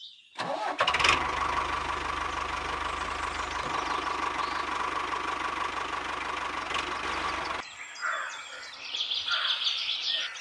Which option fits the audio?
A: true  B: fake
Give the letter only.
A